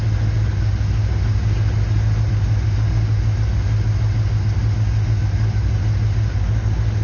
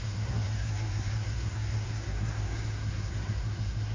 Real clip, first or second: first